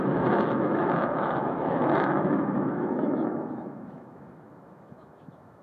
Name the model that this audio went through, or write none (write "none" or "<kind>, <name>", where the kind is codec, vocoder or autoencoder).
autoencoder, DAC-VAE